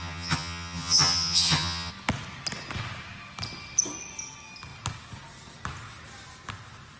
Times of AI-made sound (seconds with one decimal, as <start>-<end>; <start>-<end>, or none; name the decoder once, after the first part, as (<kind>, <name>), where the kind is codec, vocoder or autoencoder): 0.0-1.9 (vocoder, HiFi-GAN)